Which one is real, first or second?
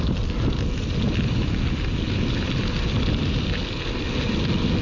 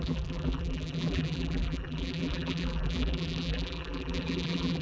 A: first